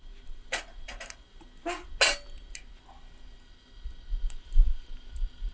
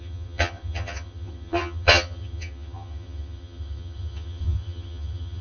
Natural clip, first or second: first